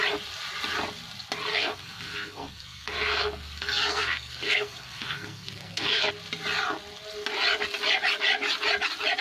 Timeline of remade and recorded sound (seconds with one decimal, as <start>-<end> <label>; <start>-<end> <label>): 0.0-1.5 recorded; 1.5-6.1 remade; 6.1-9.2 recorded